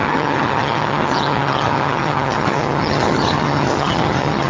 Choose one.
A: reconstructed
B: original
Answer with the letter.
A